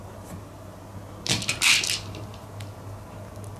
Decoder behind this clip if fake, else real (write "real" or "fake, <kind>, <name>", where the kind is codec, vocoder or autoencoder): real